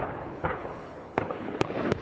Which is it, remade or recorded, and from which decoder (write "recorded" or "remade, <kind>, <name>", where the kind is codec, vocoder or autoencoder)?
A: remade, codec, HILCodec